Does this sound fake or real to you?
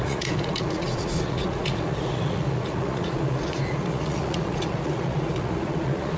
fake